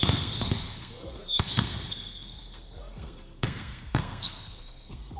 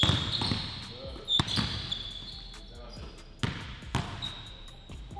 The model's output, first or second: first